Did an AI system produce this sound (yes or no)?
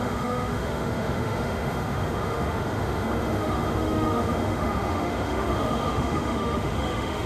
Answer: yes